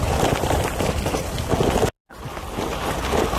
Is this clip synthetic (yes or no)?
no